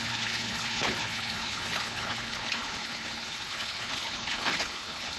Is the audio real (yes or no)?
no